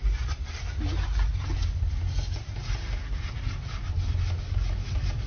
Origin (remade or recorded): recorded